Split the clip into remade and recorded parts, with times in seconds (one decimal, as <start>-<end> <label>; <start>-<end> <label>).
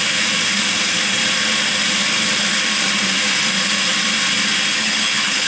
0.0-4.7 recorded; 4.7-5.5 remade